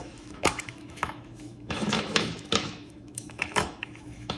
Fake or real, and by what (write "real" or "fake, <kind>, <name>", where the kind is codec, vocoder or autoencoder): fake, autoencoder, DAC-VAE